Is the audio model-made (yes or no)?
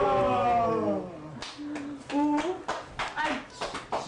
no